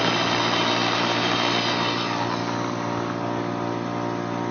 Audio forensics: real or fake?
real